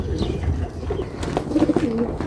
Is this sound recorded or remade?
recorded